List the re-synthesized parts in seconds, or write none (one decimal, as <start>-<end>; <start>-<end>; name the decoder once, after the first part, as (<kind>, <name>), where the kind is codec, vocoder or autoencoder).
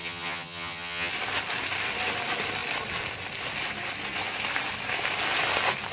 0.0-1.1 (vocoder, HiFi-GAN)